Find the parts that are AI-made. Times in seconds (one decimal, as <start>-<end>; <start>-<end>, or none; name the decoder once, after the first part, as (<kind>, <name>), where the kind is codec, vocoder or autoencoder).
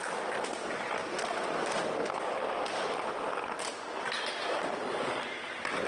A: none